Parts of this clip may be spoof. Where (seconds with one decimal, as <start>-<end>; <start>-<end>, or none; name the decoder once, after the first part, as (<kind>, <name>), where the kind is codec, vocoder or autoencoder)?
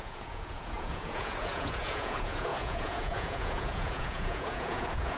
0.0-5.2 (vocoder, Vocos)